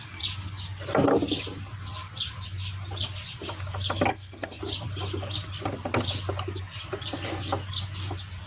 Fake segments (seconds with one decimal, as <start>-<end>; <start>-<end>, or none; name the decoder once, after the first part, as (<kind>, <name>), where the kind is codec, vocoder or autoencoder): 4.1-4.6 (codec, SNAC)